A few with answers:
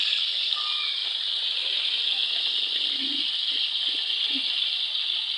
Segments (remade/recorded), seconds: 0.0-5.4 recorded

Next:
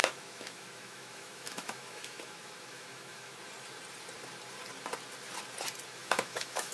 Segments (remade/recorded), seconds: 0.0-3.4 remade; 3.4-6.0 recorded; 6.0-6.7 remade